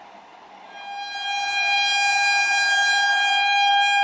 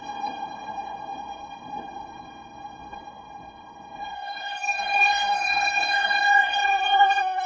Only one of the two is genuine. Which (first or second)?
first